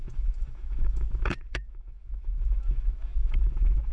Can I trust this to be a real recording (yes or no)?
no